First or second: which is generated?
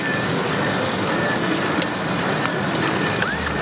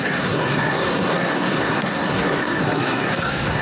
second